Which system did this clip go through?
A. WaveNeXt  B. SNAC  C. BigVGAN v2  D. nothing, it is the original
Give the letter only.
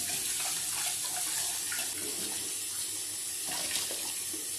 D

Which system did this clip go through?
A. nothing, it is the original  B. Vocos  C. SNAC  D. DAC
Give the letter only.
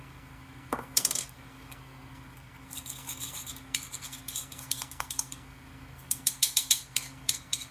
C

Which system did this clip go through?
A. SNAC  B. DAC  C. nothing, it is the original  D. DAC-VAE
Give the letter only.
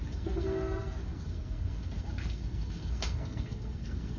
A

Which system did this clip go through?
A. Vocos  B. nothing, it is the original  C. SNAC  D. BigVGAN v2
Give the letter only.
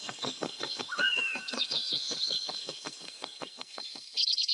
C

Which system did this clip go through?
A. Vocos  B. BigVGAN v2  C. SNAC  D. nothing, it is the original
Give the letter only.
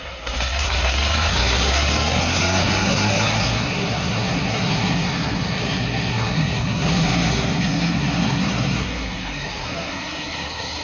C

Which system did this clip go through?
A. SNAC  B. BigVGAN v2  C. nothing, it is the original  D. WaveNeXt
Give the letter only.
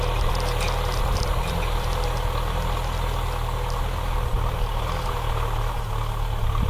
C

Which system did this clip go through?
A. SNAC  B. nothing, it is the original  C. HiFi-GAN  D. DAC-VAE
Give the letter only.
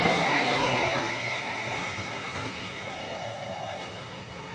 A